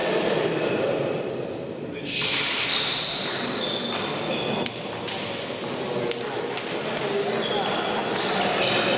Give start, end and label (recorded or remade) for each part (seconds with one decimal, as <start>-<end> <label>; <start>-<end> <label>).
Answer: 0.0-1.3 remade; 1.3-9.0 recorded